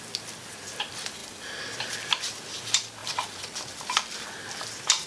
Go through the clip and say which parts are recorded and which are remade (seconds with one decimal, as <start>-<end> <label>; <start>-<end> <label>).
0.0-3.0 recorded; 3.0-4.6 remade; 4.6-5.1 recorded